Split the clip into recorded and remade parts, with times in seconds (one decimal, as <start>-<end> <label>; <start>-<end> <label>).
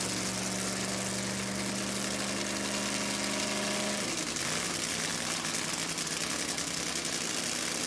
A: 0.0-7.9 recorded